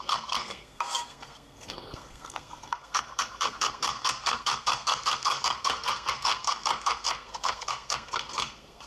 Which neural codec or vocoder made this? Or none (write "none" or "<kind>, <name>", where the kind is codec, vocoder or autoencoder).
codec, SNAC